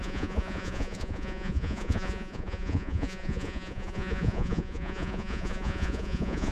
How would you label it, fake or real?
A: fake